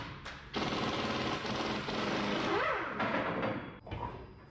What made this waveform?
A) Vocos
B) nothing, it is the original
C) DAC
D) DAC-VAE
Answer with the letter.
B